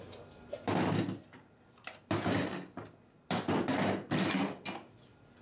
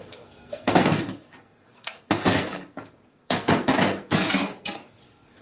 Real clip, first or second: first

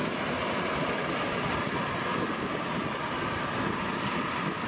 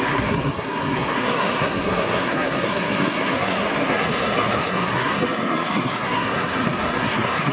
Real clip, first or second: first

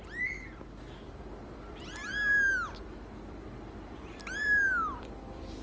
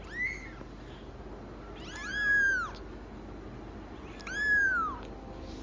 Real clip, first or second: second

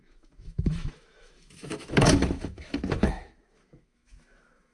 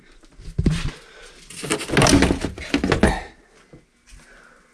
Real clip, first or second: second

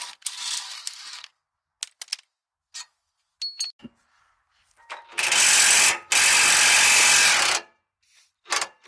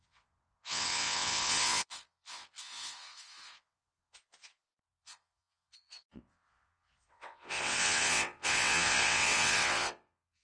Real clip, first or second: first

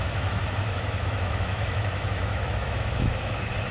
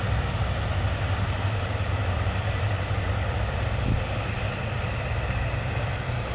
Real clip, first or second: second